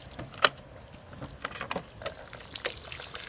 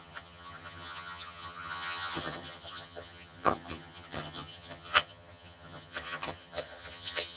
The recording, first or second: first